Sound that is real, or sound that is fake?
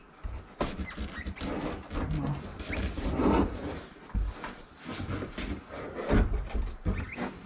real